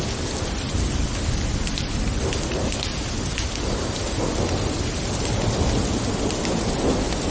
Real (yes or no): yes